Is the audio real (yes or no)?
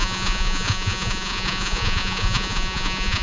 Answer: no